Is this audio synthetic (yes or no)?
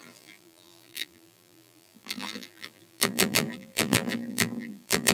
yes